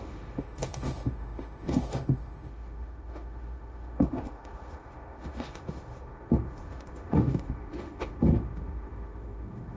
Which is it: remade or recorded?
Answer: remade